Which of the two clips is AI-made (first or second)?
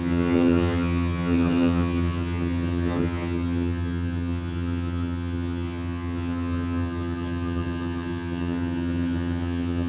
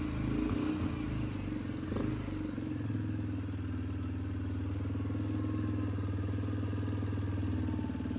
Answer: first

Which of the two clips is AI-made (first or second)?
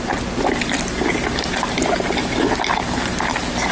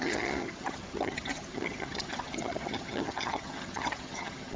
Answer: second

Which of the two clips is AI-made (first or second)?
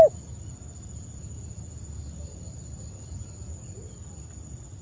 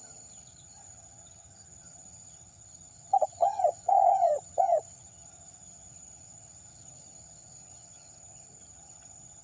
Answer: second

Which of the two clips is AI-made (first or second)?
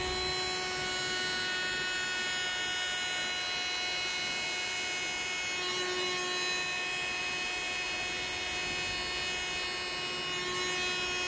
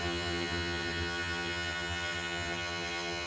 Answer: second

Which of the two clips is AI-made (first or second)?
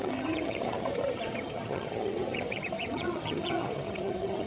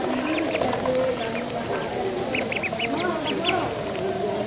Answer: first